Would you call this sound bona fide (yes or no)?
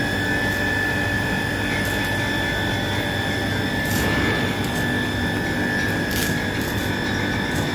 yes